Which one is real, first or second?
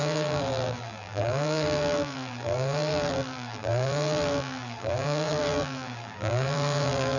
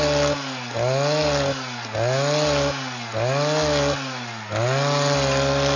second